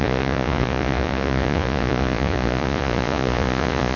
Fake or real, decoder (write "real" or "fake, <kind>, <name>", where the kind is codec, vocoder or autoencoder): fake, vocoder, Vocos